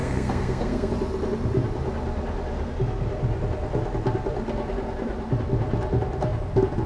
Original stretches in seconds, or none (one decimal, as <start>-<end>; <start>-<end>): 0.9-6.9